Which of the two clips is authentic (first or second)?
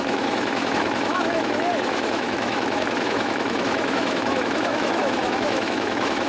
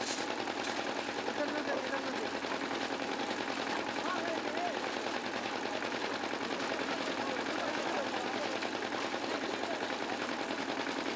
second